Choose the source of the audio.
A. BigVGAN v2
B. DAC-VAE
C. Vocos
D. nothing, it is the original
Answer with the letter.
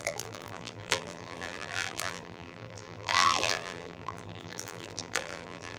A